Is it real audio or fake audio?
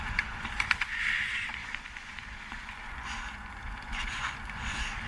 fake